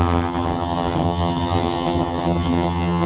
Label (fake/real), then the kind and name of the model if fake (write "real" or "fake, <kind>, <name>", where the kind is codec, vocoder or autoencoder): fake, vocoder, HiFi-GAN